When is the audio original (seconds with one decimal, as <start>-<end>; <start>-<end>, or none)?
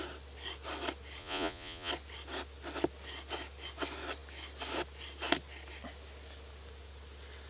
0.0-1.2; 1.9-7.5